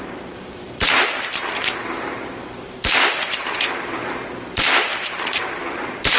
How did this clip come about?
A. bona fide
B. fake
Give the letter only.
B